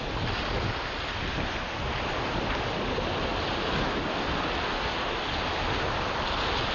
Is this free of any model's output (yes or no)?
yes